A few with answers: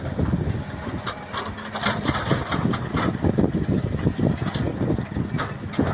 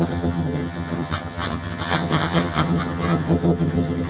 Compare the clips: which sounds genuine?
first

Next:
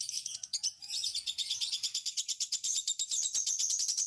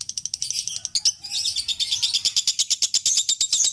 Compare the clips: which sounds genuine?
second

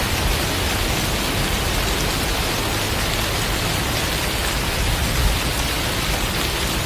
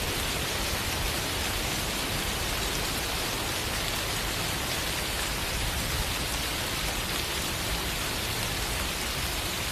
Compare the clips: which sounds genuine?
first